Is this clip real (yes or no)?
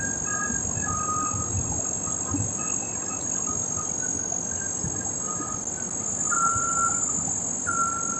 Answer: yes